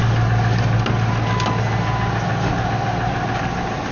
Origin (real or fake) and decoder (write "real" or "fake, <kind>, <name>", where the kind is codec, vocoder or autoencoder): real